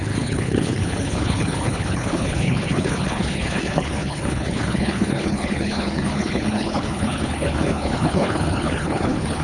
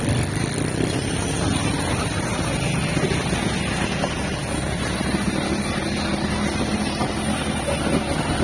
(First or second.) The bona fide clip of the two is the second